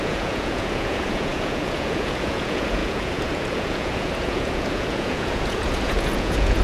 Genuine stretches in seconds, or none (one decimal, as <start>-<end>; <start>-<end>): none